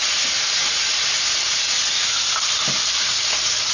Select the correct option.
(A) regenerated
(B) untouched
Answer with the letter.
B